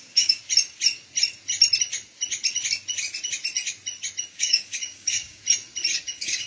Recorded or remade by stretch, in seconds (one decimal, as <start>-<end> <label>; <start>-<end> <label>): 0.0-0.4 remade; 0.4-4.3 recorded; 4.3-5.4 remade; 5.4-6.0 recorded; 6.0-6.5 remade